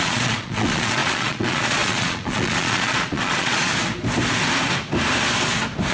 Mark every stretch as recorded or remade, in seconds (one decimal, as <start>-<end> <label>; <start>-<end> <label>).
0.0-3.7 remade; 3.7-5.9 recorded